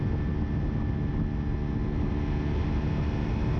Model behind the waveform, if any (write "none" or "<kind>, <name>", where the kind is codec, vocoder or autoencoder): none